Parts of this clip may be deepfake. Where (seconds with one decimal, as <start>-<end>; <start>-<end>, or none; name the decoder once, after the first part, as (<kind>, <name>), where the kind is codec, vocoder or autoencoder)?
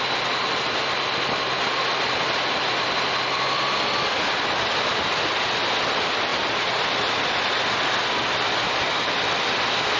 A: none